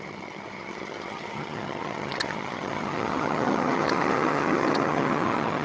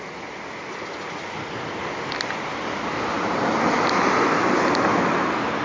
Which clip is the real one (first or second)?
second